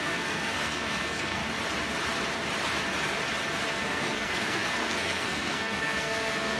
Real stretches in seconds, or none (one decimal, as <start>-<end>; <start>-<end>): 1.4-3.7